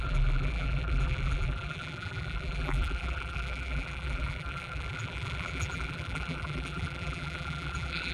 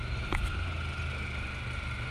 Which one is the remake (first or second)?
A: first